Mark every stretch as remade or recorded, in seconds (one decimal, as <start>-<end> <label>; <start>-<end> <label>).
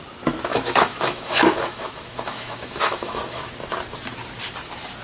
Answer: 0.0-0.5 recorded; 0.5-3.5 remade; 3.5-5.0 recorded